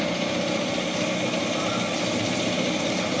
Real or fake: real